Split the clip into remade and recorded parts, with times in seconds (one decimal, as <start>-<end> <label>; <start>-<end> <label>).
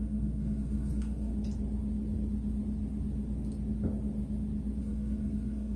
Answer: 0.0-1.3 remade; 1.3-4.8 recorded; 4.8-5.8 remade